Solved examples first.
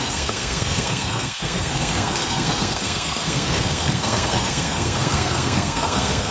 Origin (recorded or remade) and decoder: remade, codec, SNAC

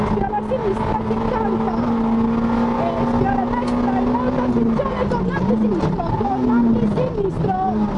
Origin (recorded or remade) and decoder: recorded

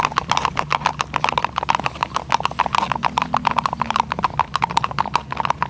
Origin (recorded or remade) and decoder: recorded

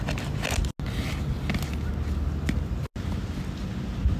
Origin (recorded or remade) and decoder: recorded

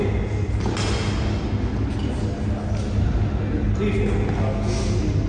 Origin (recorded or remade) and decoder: recorded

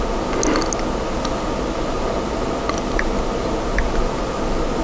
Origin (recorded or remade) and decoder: recorded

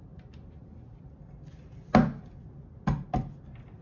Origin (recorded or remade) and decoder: recorded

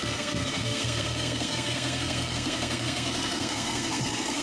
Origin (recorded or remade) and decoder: remade, codec, SNAC